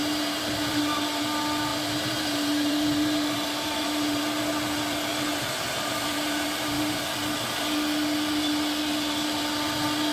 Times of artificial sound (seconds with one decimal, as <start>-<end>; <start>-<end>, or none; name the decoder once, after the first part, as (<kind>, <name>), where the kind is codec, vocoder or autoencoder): 0.0-1.2 (vocoder, BigVGAN v2); 1.7-4.2; 5.3-7.0